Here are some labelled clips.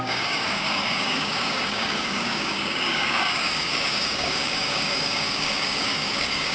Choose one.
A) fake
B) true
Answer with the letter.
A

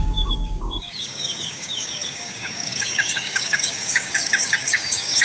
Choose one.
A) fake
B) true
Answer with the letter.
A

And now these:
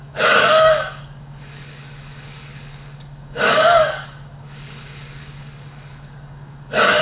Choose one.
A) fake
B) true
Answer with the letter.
A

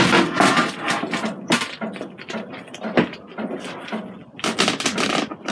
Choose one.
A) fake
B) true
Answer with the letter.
B